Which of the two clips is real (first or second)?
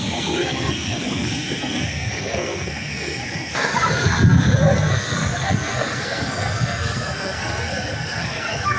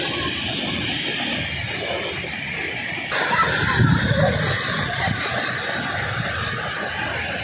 second